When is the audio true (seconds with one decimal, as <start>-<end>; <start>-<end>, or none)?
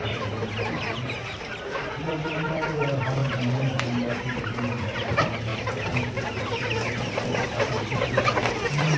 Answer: 5.5-6.3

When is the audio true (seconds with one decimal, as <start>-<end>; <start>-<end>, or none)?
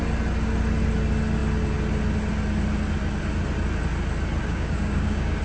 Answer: 0.0-4.4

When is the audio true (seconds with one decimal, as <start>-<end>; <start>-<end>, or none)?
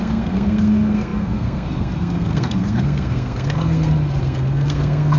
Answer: none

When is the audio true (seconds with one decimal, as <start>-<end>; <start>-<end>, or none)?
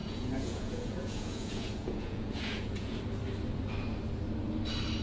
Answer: 3.0-5.0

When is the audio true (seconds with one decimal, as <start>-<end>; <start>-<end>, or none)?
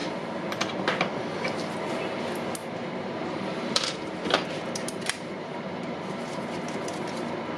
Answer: 0.0-2.6; 6.4-7.6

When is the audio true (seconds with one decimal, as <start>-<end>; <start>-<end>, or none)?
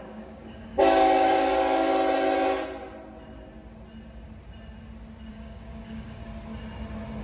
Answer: 1.9-5.3; 6.2-7.2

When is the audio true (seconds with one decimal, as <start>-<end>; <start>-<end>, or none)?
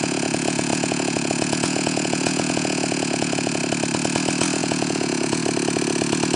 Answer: 3.6-4.6; 5.4-6.4